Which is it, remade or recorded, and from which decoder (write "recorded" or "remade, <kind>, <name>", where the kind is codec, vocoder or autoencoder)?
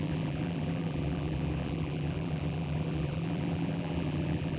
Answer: remade, vocoder, BigVGAN v2